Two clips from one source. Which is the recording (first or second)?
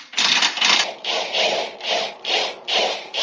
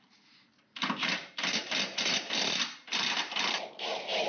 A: first